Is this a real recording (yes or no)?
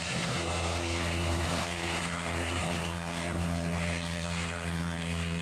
no